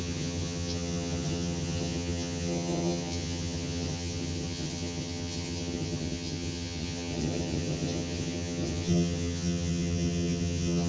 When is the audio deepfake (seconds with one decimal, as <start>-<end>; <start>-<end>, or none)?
0.0-10.9